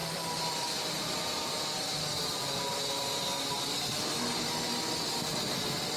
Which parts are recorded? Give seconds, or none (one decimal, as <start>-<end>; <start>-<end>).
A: 3.6-6.0